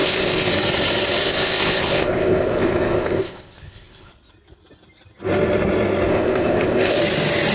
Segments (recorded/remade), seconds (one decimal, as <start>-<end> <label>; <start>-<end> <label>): 0.0-0.5 remade; 0.5-1.2 recorded; 1.2-4.1 remade; 4.1-6.1 recorded; 6.1-7.0 remade; 7.0-7.5 recorded